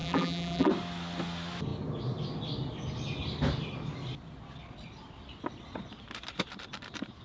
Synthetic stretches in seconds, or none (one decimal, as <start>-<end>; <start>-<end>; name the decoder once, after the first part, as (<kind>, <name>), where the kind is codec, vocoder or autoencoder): 0.0-0.7 (vocoder, BigVGAN v2)